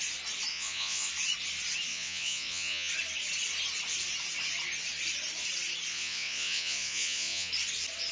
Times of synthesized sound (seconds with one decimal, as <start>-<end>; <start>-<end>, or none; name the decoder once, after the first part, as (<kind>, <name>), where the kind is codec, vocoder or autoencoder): 0.5-1.1 (vocoder, Vocos); 1.9-2.9; 5.9-7.5